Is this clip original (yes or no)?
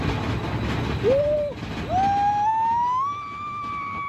yes